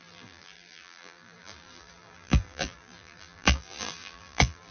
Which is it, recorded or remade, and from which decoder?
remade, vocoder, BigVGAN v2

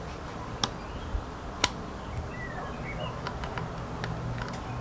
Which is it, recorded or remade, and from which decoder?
recorded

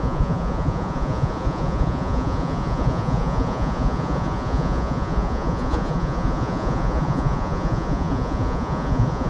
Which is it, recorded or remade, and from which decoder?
remade, vocoder, Vocos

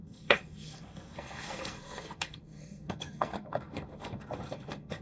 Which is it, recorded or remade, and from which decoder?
remade, codec, SNAC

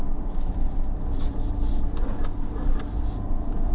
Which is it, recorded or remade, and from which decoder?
recorded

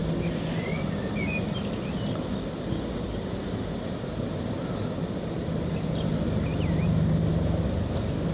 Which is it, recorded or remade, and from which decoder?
remade, vocoder, BigVGAN v2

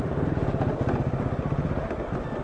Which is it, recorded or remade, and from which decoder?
remade, vocoder, BigVGAN v2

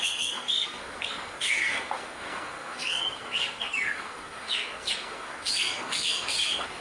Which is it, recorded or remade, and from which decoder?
remade, codec, SNAC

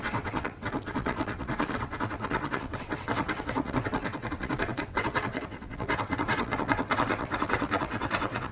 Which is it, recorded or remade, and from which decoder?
remade, vocoder, WaveNeXt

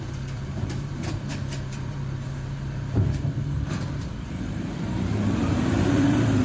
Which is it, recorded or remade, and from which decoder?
remade, vocoder, BigVGAN v2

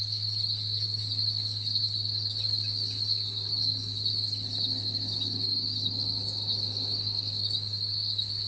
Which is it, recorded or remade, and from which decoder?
remade, codec, DAC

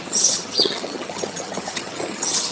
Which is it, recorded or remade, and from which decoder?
remade, vocoder, HiFi-GAN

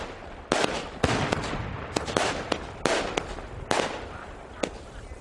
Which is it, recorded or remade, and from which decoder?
recorded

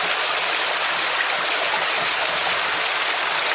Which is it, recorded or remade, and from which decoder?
recorded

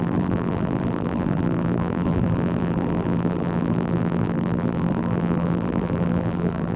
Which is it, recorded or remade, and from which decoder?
remade, vocoder, BigVGAN v2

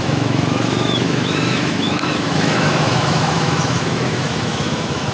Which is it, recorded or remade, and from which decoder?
remade, autoencoder, DAC-VAE